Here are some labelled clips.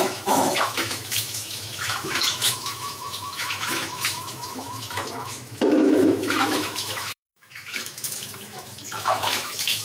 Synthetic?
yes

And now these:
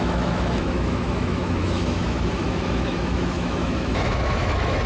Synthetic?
yes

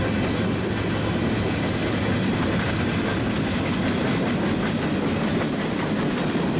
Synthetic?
no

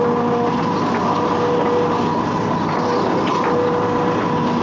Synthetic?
no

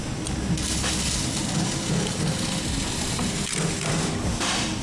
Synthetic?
no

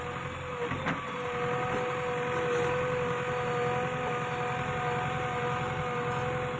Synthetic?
no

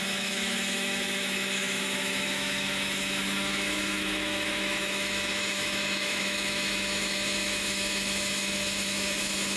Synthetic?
yes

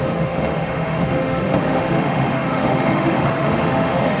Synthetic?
yes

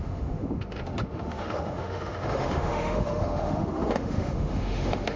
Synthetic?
yes